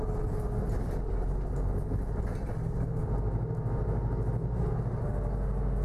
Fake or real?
real